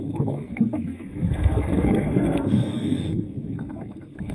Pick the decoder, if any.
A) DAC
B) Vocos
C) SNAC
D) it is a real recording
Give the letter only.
C